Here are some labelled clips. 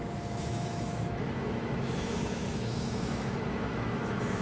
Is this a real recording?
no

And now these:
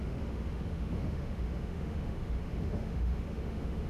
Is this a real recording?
no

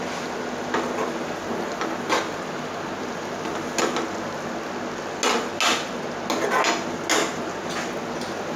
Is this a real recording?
yes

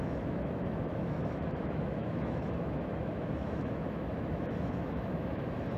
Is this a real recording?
no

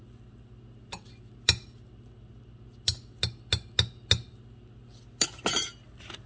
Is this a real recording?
yes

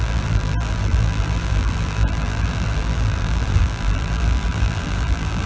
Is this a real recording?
no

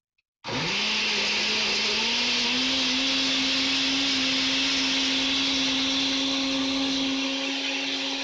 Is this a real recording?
yes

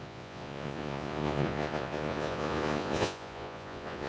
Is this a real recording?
no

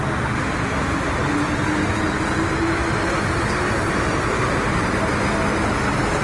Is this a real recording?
yes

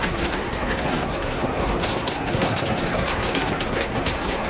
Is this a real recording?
no